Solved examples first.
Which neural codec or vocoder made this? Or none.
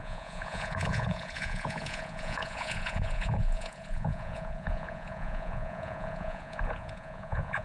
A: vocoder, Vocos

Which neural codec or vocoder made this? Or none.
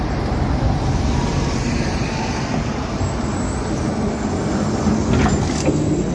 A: none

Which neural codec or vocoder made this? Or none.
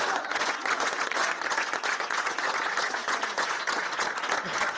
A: vocoder, Vocos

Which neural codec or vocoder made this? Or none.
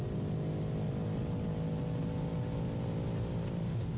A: none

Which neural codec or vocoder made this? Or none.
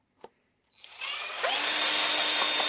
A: none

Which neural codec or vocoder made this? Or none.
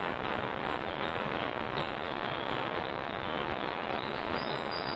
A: vocoder, Vocos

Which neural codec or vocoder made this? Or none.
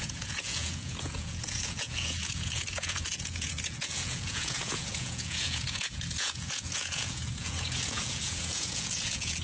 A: vocoder, Vocos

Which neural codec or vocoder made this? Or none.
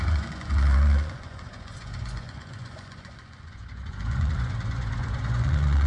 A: vocoder, Vocos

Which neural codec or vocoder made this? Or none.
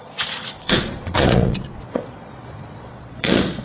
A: vocoder, Vocos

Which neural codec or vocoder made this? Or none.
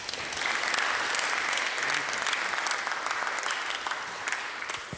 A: none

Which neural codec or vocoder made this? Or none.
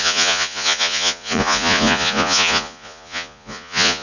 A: vocoder, Vocos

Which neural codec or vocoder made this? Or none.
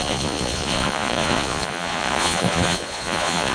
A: vocoder, Vocos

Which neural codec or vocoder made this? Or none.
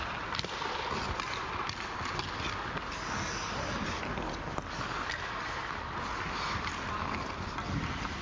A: none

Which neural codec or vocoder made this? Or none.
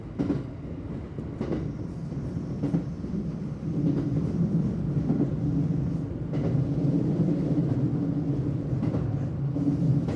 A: none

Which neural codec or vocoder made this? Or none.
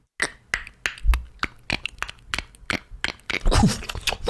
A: none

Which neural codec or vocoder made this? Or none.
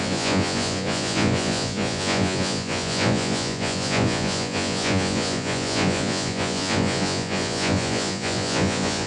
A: vocoder, Vocos